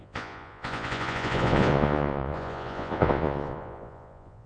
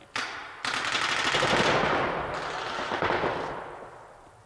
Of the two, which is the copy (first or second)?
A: first